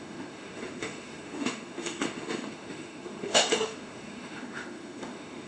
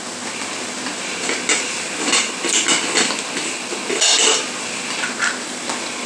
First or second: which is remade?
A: first